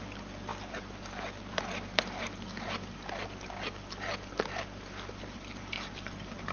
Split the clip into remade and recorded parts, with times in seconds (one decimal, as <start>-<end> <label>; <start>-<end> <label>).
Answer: 0.0-6.5 recorded